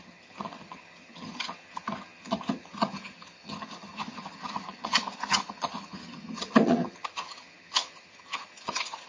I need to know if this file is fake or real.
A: fake